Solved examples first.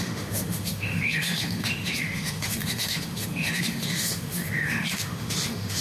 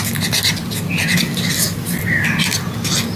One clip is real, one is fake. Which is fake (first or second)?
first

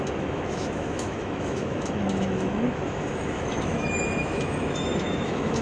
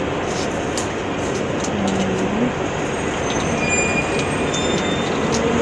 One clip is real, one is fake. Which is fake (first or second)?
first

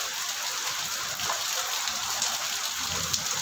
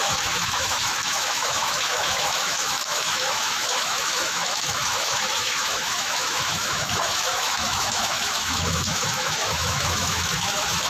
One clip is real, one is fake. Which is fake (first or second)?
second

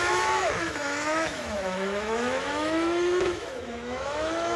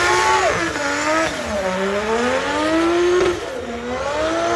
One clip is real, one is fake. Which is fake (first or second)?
first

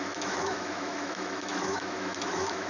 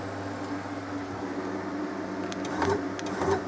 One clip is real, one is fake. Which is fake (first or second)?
first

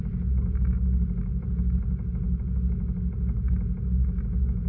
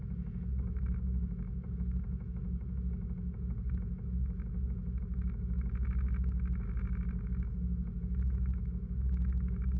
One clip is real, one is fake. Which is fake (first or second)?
second